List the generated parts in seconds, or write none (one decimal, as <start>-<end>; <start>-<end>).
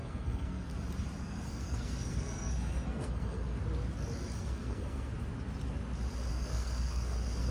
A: 0.0-0.7; 1.2-3.6; 4.4-5.1; 6.3-7.5